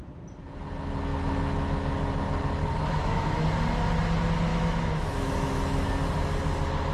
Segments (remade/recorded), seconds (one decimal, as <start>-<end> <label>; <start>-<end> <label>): 0.0-2.6 recorded; 2.6-3.4 remade; 3.4-4.5 recorded; 4.5-5.9 remade; 5.9-6.9 recorded